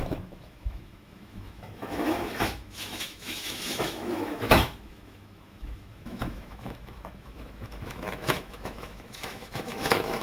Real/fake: fake